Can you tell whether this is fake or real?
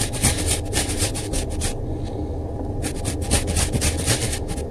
real